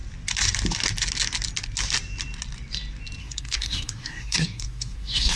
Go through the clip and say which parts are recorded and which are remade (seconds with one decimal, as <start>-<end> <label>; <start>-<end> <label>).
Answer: 0.0-3.2 recorded; 3.2-5.4 remade